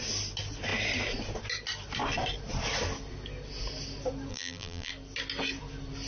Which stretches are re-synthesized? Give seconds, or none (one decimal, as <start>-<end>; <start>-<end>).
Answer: 4.3-4.9